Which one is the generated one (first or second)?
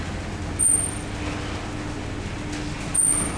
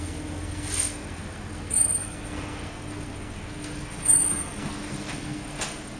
second